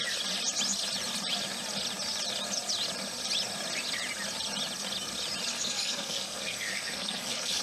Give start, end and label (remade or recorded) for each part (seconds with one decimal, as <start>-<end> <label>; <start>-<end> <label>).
0.0-5.5 recorded; 5.5-7.6 remade